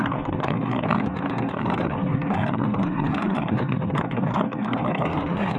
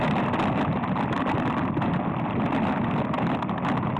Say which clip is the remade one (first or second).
first